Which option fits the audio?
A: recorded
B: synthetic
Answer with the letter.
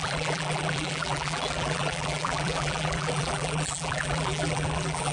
B